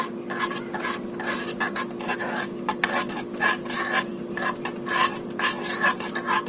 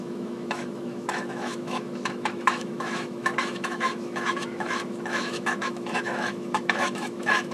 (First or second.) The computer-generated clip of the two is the second